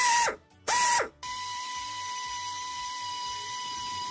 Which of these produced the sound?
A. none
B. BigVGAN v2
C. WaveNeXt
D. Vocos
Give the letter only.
B